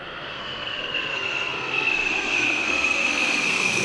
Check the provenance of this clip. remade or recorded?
remade